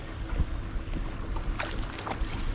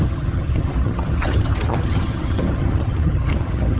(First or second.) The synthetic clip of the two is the second